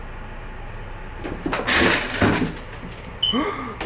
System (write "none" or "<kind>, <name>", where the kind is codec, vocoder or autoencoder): none